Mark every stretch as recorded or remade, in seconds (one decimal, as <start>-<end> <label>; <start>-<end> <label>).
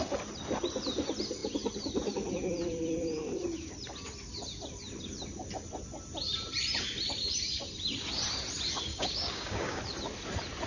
0.0-8.9 recorded; 8.9-9.8 remade; 9.8-10.7 recorded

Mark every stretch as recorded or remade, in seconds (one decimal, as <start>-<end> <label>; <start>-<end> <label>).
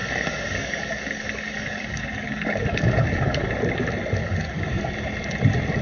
0.0-3.5 remade; 3.5-4.2 recorded; 4.2-4.9 remade; 4.9-5.8 recorded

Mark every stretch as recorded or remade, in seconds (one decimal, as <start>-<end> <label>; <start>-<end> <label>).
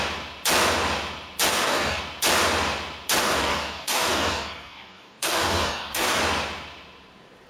0.0-1.5 recorded; 1.5-2.0 remade; 2.0-3.2 recorded; 3.2-6.2 remade; 6.2-7.5 recorded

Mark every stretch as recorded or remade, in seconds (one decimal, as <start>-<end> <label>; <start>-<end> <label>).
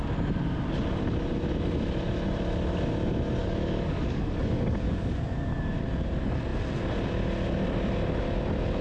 0.0-3.4 recorded; 3.4-5.1 remade; 5.1-8.8 recorded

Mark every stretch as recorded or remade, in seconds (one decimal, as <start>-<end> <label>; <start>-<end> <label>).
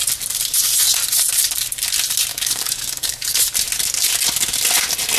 0.0-2.3 recorded; 2.3-3.4 remade; 3.4-5.2 recorded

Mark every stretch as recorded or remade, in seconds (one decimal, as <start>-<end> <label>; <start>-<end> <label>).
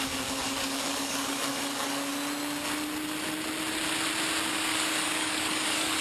0.0-2.1 remade; 2.1-4.5 recorded; 4.5-6.0 remade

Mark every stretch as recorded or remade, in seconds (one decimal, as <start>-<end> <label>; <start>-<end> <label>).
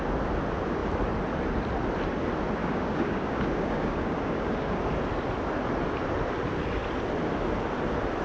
0.0-2.6 recorded; 2.6-4.8 remade; 4.8-8.2 recorded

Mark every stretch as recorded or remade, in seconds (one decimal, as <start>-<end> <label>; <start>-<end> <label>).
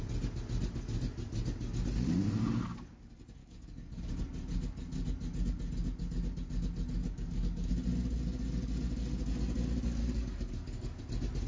0.0-3.4 recorded; 3.4-4.0 remade; 4.0-7.0 recorded; 7.0-7.7 remade; 7.7-10.0 recorded; 10.0-11.0 remade; 11.0-11.5 recorded